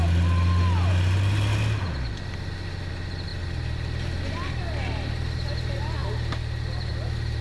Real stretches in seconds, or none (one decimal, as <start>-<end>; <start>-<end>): 0.0-7.4